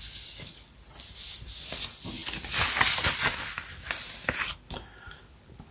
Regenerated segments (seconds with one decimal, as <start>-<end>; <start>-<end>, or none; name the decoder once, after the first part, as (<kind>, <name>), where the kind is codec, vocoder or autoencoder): none